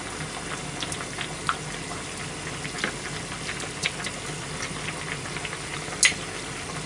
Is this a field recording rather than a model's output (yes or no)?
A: yes